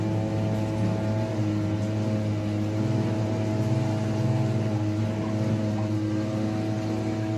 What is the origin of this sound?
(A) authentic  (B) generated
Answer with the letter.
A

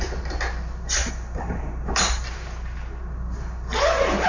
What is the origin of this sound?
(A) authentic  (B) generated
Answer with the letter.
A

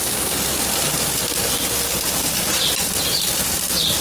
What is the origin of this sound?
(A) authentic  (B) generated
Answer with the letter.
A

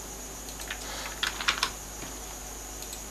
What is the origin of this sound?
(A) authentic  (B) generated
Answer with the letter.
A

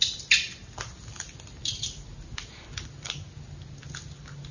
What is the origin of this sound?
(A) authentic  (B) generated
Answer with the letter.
A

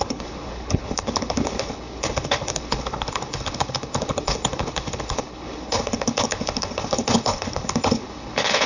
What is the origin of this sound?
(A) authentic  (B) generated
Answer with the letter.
B